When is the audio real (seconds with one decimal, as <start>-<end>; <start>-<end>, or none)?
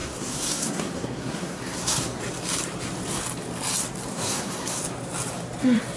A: 2.2-4.1; 4.8-6.0